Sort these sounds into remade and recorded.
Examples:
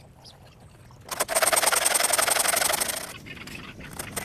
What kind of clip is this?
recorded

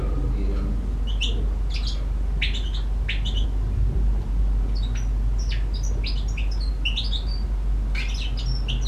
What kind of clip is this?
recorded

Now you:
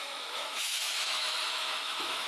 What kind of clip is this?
remade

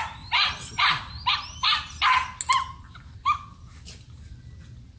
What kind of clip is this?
recorded